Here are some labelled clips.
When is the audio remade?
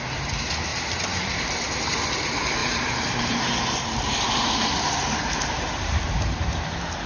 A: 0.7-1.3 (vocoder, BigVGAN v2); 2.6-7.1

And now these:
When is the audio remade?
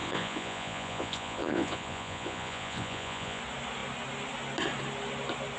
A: 0.0-3.4 (vocoder, Vocos)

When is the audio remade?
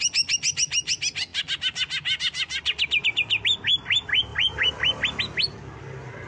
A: none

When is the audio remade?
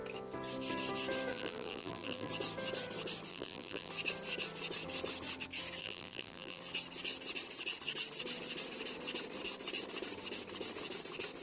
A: 1.3-2.3 (vocoder, BigVGAN v2); 3.3-3.9; 5.8-6.6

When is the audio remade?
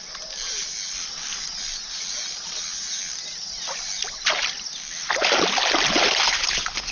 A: none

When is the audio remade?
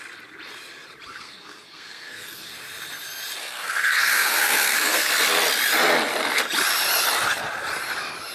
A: 1.1-2.5 (codec, SNAC); 3.4-5.1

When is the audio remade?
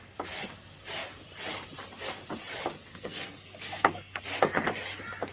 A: 2.9-4.2 (codec, SNAC)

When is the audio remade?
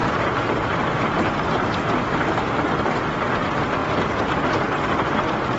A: 0.0-2.6 (vocoder, BigVGAN v2); 3.8-4.6